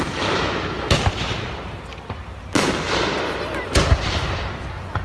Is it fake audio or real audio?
real